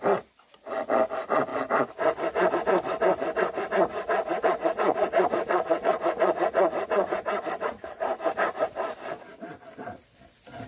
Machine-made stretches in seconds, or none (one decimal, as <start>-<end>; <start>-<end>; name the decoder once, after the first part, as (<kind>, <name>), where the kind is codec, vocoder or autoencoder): 3.9-8.6 (vocoder, Vocos)